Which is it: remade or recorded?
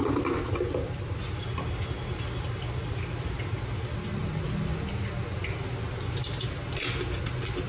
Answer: recorded